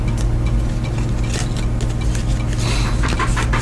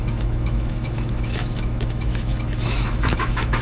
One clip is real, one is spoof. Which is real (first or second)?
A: first